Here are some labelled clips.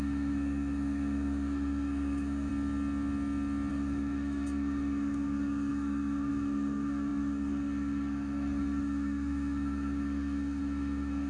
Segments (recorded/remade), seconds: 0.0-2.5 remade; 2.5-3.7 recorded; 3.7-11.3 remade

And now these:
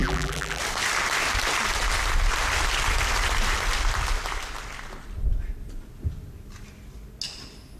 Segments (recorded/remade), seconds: 0.0-0.6 remade; 0.6-7.8 recorded

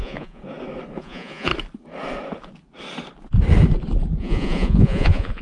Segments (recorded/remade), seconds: 0.0-0.4 remade; 0.4-1.0 recorded; 1.0-1.5 remade; 1.5-4.2 recorded; 4.2-5.4 remade

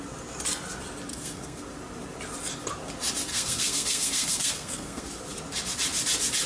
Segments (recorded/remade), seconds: 0.0-1.1 recorded; 1.1-1.6 remade; 1.6-3.3 recorded; 3.3-5.1 remade; 5.1-6.5 recorded

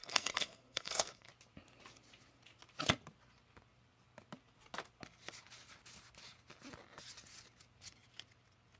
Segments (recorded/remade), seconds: 0.0-1.3 remade; 1.3-8.8 recorded

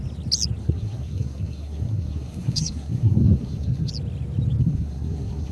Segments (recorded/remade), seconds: 0.0-0.6 recorded; 0.6-3.9 remade; 3.9-4.6 recorded; 4.6-5.5 remade

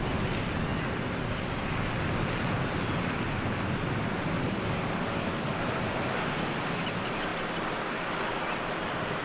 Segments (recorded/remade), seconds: 0.0-9.2 recorded

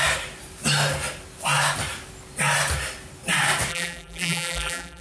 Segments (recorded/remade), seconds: 0.0-3.7 recorded; 3.7-5.0 remade